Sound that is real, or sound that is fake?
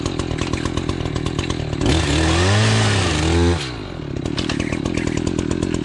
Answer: real